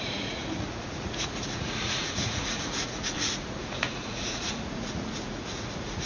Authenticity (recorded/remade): remade